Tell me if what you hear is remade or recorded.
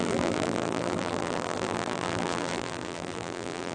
remade